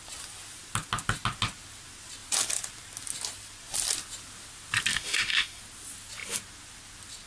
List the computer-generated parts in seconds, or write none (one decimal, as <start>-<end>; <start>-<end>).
4.9-5.6